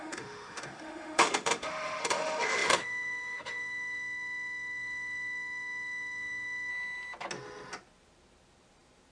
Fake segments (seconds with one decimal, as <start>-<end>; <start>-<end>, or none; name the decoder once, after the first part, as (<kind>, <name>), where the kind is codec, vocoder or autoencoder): 0.0-6.7 (autoencoder, DAC-VAE)